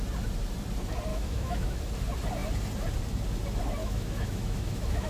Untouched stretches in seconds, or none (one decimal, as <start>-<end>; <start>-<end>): 0.0-1.1; 1.8-3.8